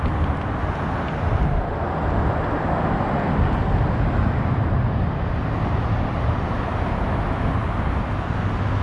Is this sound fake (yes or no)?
no